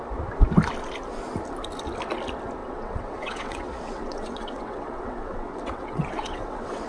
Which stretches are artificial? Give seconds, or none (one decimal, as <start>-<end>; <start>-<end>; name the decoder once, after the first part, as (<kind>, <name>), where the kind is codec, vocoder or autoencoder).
2.6-6.9 (vocoder, WaveNeXt)